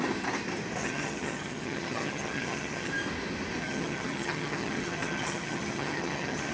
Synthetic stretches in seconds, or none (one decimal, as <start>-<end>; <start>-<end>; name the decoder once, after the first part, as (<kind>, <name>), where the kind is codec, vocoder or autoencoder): 0.8-2.9 (vocoder, HiFi-GAN); 3.6-6.5